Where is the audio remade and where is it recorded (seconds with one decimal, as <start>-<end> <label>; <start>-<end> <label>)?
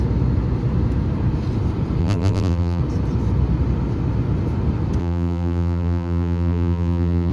0.0-2.0 recorded; 2.0-2.8 remade; 2.8-5.0 recorded; 5.0-7.3 remade